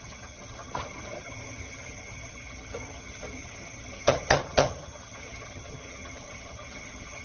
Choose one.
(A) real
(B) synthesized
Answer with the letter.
B